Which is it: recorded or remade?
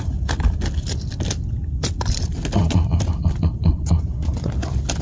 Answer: recorded